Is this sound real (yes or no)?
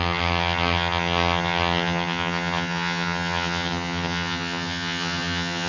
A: no